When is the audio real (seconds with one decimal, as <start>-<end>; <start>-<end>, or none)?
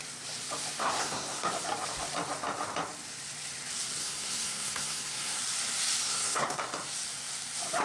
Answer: 0.0-0.8; 1.5-4.0; 5.4-6.0; 6.6-7.8